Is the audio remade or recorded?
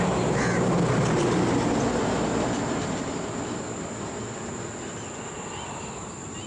recorded